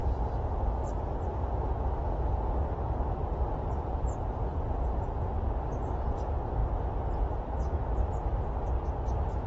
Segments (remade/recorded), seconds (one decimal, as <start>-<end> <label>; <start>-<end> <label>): 0.0-9.5 recorded